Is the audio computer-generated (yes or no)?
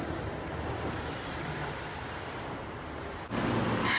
no